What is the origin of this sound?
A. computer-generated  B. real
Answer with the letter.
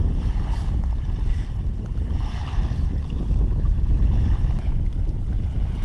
B